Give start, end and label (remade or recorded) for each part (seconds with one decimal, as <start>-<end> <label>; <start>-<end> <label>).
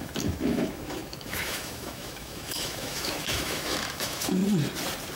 0.0-4.4 remade; 4.4-5.2 recorded